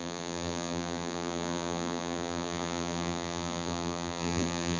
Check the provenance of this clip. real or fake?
fake